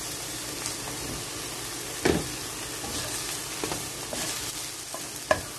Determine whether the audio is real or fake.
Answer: real